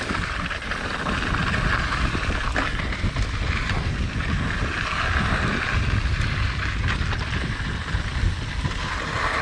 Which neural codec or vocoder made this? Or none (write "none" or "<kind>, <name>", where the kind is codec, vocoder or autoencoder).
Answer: none